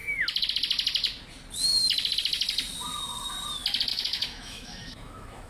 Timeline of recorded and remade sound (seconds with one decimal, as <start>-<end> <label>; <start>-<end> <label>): 0.0-3.9 recorded; 3.9-5.5 remade